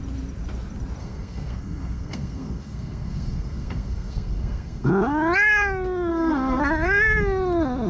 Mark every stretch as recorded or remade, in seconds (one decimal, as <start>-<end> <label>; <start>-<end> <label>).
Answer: 0.0-1.0 recorded; 1.0-4.9 remade; 4.9-6.1 recorded; 6.1-6.6 remade; 6.6-7.9 recorded